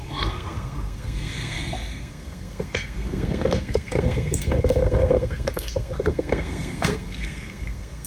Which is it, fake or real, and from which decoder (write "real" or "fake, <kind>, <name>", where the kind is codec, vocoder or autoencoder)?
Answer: fake, codec, SNAC